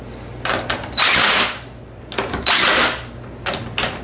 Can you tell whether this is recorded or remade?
recorded